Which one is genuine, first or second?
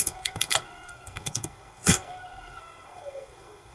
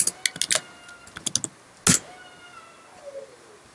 second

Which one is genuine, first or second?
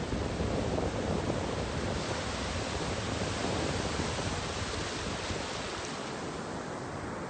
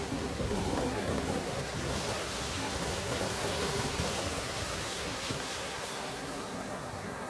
first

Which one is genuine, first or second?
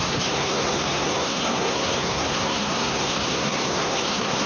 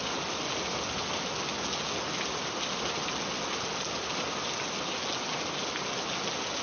second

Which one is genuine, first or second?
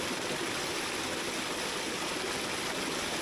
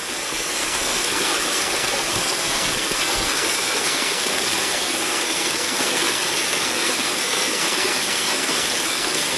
first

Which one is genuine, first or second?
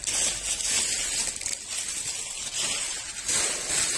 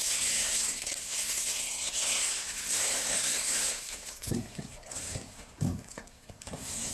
first